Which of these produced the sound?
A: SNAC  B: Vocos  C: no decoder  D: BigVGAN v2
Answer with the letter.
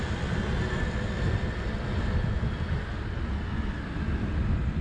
C